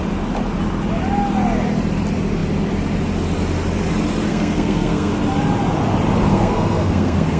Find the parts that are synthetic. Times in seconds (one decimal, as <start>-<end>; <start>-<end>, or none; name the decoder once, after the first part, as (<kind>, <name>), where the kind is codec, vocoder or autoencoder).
4.3-5.1 (codec, SNAC); 6.3-7.4